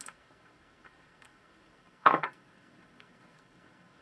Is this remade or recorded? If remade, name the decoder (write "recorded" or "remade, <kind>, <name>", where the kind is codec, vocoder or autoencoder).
remade, codec, SNAC